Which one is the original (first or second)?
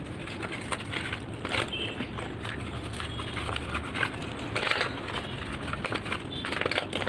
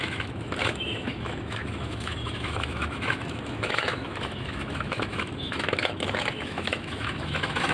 first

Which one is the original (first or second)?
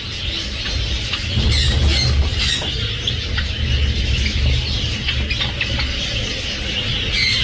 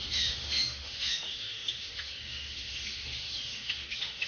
first